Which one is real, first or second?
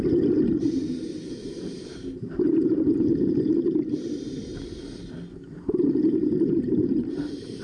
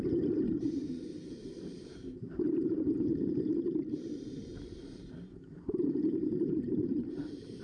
first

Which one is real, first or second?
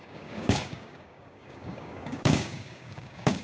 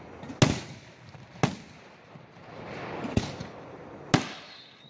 second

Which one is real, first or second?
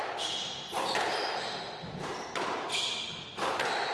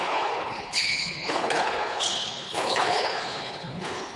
first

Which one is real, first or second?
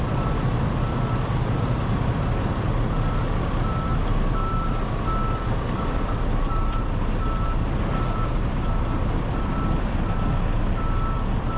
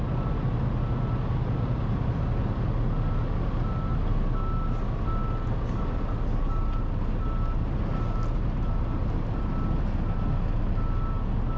second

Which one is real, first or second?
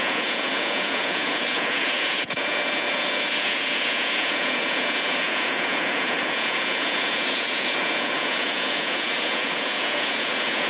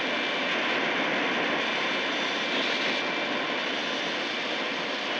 second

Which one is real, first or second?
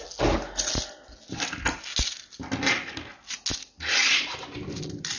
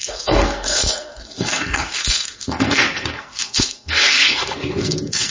first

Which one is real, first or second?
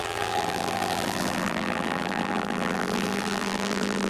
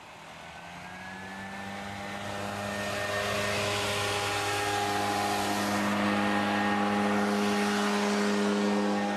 second